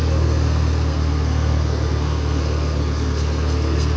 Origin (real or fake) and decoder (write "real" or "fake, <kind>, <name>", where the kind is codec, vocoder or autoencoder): fake, codec, SNAC